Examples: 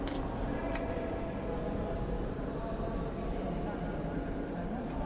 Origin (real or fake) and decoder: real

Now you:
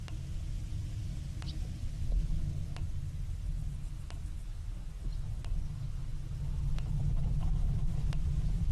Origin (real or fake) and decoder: real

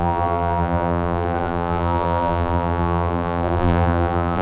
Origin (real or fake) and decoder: fake, vocoder, BigVGAN v2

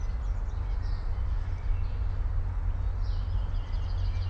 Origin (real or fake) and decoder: real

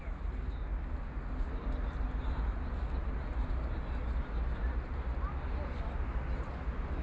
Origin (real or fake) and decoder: real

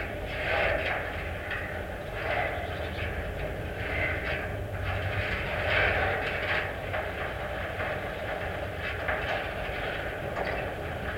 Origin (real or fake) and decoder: real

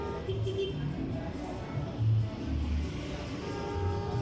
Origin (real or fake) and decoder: real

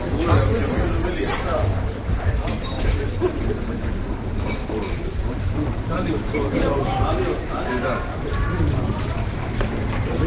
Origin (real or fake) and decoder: fake, vocoder, BigVGAN v2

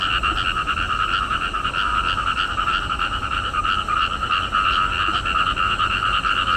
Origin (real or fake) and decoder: real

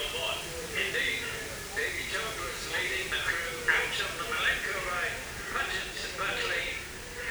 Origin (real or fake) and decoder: fake, vocoder, BigVGAN v2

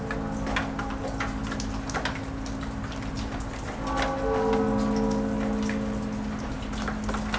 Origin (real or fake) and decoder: real